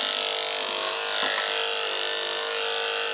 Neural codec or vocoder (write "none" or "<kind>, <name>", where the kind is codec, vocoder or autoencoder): none